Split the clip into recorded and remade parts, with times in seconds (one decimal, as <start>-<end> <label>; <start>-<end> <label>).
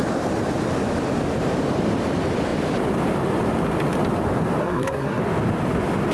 0.0-4.6 recorded; 4.6-5.2 remade; 5.2-6.1 recorded